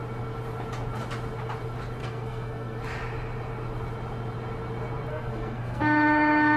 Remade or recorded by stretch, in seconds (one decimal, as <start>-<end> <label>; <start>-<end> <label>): 0.0-2.0 recorded; 2.0-2.8 remade; 2.8-5.1 recorded; 5.1-6.6 remade